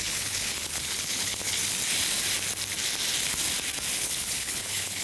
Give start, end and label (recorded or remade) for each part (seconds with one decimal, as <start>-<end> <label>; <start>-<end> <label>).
0.0-1.6 remade; 1.6-4.0 recorded; 4.0-5.0 remade